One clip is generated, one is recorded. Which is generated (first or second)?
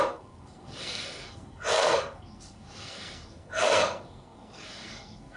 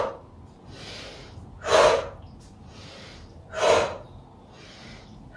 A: first